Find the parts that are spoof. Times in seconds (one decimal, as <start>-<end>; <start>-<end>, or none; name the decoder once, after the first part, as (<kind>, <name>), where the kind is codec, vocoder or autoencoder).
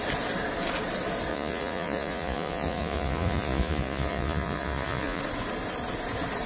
1.3-5.2 (vocoder, Vocos)